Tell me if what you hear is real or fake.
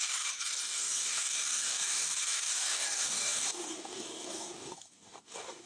fake